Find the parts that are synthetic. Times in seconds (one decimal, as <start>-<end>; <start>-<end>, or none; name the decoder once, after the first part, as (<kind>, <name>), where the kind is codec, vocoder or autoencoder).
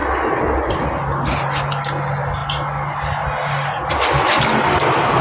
none